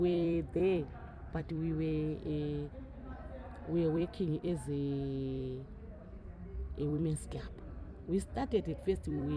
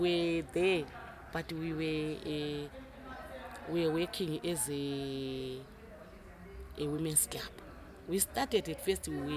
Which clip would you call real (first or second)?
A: second